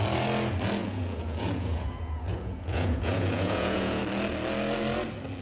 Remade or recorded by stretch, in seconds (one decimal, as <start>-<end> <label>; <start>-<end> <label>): 0.0-0.8 recorded; 0.8-4.0 remade; 4.0-5.4 recorded